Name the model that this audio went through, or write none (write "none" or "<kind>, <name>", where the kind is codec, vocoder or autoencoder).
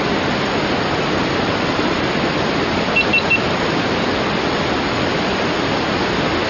none